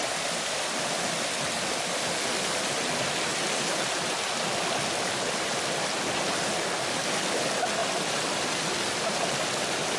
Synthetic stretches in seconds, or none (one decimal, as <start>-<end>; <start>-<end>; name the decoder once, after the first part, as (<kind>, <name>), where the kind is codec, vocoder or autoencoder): none